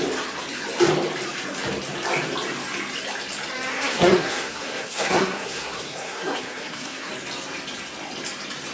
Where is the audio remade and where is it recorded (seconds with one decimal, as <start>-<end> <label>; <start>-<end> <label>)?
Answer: 0.0-3.7 recorded; 3.7-7.1 remade; 7.1-8.7 recorded